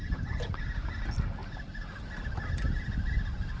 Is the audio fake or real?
real